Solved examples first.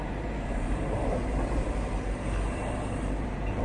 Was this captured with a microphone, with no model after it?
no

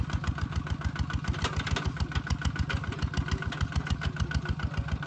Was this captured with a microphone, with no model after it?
yes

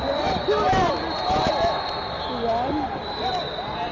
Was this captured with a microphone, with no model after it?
no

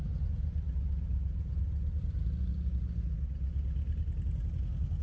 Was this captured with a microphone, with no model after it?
yes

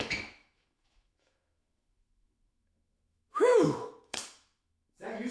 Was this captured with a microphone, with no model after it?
no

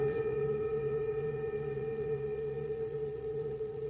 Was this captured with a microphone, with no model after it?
no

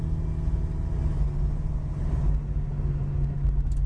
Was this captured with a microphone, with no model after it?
yes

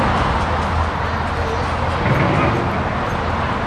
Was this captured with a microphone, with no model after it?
yes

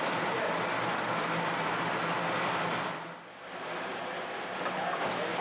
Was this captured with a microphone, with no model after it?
yes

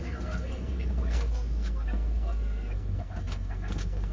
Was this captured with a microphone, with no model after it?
no